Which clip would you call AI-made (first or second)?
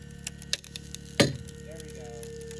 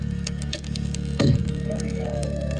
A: second